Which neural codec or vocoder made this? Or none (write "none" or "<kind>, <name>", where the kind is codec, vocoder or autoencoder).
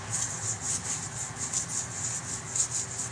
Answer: none